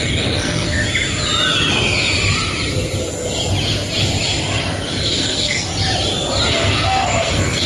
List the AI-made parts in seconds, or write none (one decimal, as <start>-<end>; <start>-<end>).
0.0-0.8; 5.0-5.7; 6.5-7.7